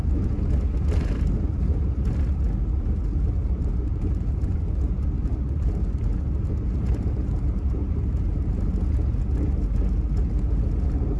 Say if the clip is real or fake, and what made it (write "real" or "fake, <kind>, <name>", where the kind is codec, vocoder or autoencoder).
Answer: real